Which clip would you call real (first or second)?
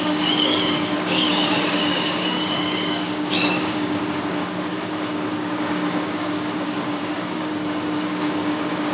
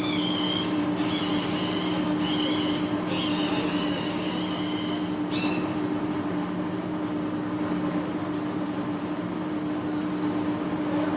second